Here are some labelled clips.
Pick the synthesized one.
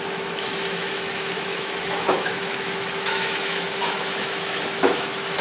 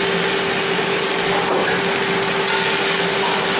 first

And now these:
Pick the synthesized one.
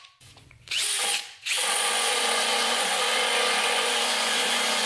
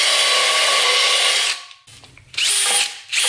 first